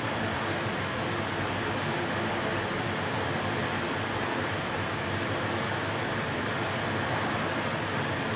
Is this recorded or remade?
recorded